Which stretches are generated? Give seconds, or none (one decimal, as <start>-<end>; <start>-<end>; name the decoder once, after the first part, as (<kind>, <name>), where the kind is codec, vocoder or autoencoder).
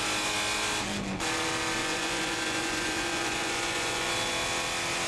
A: 1.8-4.1 (vocoder, Vocos)